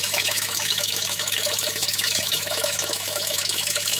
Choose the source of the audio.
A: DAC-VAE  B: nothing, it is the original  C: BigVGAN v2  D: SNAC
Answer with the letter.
A